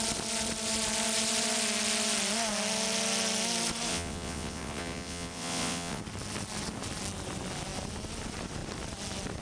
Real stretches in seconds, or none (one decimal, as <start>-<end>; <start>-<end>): 0.0-3.9; 6.0-9.4